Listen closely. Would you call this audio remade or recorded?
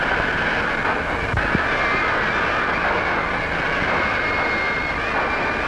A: recorded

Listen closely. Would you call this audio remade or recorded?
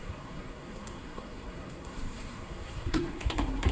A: remade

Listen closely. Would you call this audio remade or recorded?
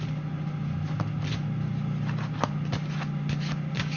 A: recorded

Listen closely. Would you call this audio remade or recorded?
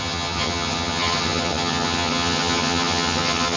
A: remade